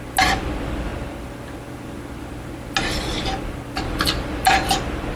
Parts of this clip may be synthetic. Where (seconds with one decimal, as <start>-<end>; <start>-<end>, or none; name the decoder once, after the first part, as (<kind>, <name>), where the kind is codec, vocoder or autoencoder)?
none